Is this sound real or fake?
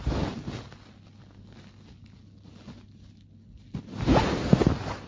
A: real